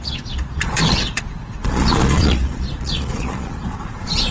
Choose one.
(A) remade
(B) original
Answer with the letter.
A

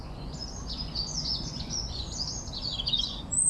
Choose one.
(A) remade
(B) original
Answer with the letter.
A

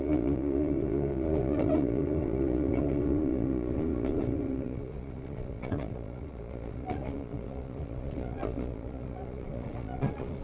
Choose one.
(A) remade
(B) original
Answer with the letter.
A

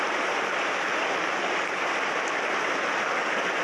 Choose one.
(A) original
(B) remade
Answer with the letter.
A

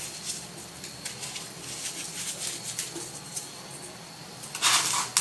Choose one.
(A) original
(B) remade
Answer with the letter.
A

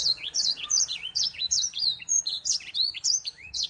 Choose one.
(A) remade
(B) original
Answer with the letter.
A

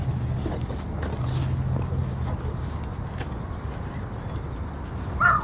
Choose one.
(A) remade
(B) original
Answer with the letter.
B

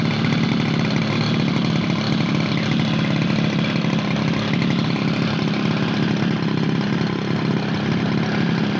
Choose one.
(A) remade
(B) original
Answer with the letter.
B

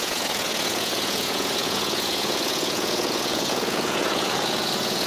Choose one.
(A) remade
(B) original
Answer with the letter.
A